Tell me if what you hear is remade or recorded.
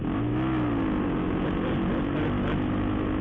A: recorded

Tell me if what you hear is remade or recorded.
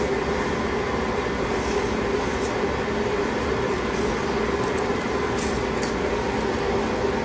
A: recorded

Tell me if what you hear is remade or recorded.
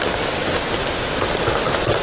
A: recorded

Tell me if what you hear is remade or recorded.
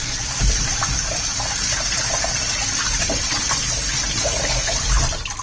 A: remade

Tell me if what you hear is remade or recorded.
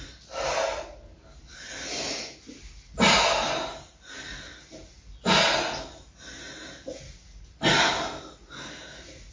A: recorded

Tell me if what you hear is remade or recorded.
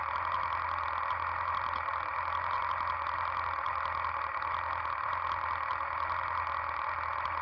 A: recorded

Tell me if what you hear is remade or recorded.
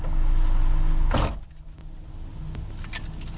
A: recorded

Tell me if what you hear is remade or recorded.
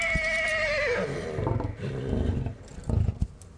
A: recorded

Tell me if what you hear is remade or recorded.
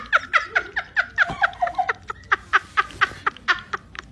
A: recorded